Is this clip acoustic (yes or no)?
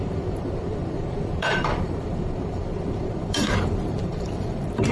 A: no